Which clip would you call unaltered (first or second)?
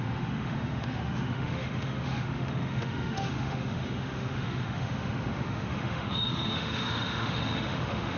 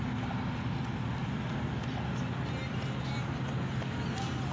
second